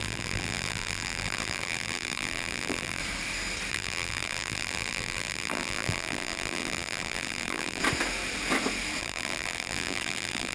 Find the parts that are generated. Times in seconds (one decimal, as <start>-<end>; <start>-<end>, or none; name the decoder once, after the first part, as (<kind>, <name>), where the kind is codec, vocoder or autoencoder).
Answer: 0.0-3.0 (vocoder, BigVGAN v2); 3.7-7.8; 9.0-10.5